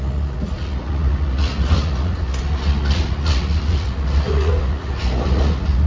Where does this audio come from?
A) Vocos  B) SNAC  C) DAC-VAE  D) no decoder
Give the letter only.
A